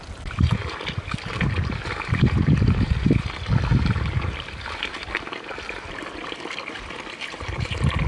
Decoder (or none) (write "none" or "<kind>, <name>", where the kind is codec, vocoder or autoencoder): none